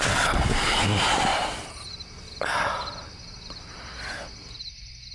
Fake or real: real